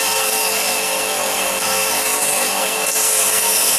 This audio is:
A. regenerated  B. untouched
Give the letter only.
A